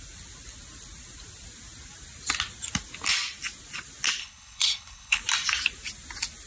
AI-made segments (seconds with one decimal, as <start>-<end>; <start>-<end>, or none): 4.2-5.2